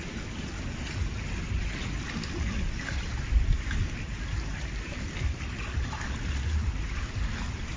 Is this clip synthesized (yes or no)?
no